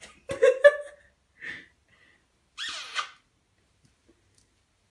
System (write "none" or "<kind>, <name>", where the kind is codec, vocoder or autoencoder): none